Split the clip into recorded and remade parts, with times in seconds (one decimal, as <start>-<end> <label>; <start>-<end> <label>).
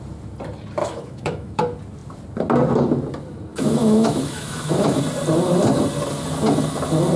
0.0-0.8 recorded; 0.8-1.6 remade; 1.6-3.5 recorded; 3.5-5.0 remade; 5.0-7.2 recorded